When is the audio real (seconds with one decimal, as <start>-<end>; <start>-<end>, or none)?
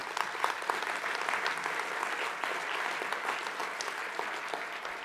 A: 0.0-3.0; 3.6-5.0